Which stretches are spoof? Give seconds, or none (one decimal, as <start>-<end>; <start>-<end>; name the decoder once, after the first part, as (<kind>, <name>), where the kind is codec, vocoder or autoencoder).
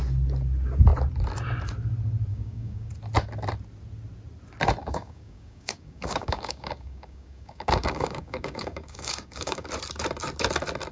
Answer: 2.3-2.9 (codec, DAC); 4.8-9.7